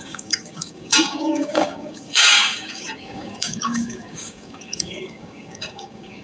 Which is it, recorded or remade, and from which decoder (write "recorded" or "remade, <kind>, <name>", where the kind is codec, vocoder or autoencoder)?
remade, codec, DAC